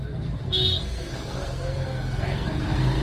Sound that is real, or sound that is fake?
fake